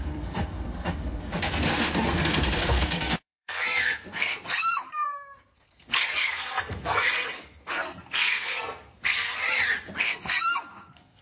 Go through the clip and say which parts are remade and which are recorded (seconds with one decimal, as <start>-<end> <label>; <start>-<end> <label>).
0.0-9.4 remade; 9.4-10.0 recorded; 10.0-11.2 remade